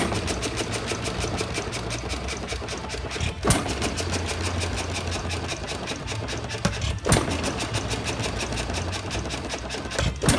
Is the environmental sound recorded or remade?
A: recorded